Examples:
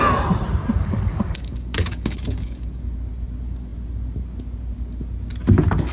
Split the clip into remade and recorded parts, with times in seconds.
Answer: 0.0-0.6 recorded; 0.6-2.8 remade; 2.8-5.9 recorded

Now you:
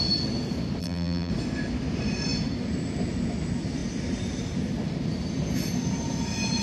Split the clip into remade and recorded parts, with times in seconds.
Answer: 0.0-0.8 recorded; 0.8-1.3 remade; 1.3-6.6 recorded

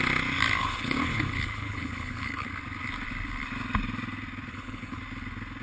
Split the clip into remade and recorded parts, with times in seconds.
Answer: 0.0-0.6 recorded; 0.6-2.5 remade; 2.5-4.5 recorded; 4.5-5.0 remade; 5.0-5.6 recorded

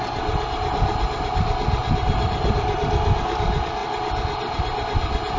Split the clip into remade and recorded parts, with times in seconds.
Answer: 0.0-5.4 recorded

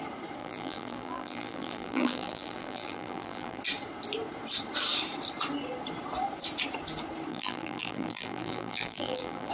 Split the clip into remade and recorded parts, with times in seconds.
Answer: 0.0-0.4 recorded; 0.4-3.6 remade; 3.6-7.3 recorded; 7.3-9.5 remade

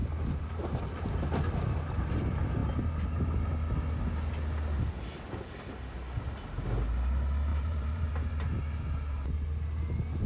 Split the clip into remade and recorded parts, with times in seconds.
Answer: 0.0-0.9 remade; 0.9-7.5 recorded; 7.5-8.3 remade; 8.3-10.3 recorded